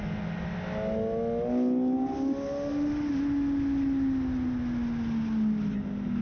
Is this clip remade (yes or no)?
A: no